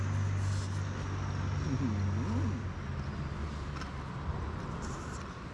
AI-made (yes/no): no